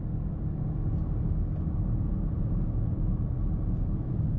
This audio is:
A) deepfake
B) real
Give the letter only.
B